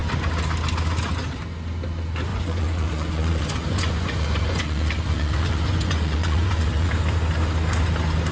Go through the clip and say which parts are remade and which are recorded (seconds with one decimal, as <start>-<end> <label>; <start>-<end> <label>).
0.0-2.3 recorded; 2.3-6.9 remade; 6.9-8.3 recorded